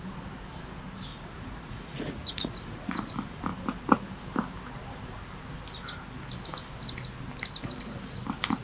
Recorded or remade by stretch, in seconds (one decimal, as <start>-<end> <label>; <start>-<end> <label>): 0.0-1.1 recorded; 1.1-3.1 remade; 3.1-8.6 recorded